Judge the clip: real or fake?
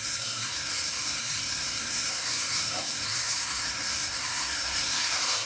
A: fake